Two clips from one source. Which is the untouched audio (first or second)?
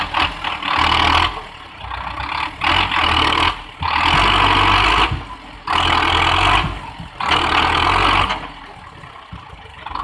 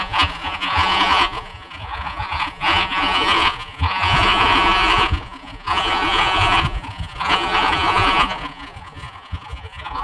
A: first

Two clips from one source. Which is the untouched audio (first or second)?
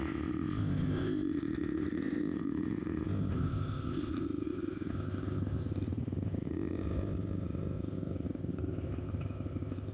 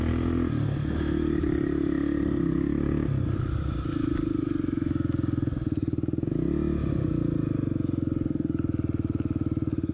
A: second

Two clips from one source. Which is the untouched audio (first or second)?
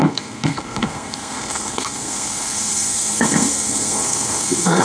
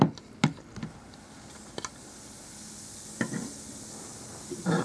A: second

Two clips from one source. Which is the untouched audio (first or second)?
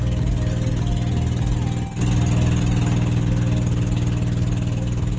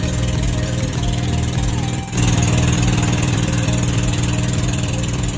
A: first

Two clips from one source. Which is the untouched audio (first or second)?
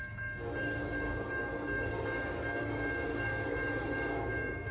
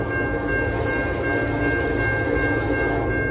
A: second